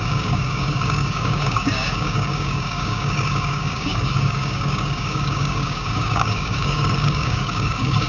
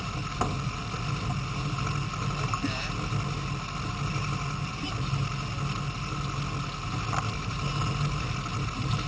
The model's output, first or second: first